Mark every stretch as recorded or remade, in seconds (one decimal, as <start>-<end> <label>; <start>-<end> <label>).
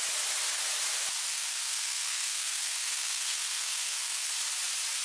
0.0-1.3 recorded; 1.3-4.3 remade; 4.3-5.0 recorded